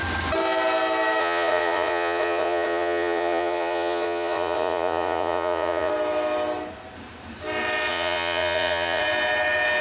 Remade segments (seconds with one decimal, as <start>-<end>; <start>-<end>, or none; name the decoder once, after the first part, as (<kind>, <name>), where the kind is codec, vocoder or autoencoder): 1.2-5.9 (vocoder, Vocos); 7.9-9.0